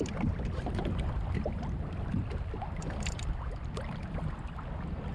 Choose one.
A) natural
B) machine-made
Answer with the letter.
A